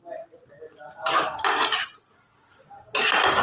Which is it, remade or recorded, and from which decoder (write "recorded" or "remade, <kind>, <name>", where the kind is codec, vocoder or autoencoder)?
recorded